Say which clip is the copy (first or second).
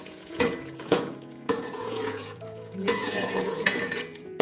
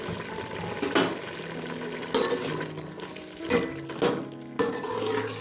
first